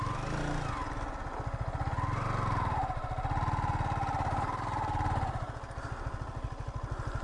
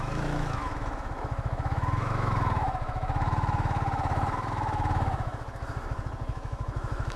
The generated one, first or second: second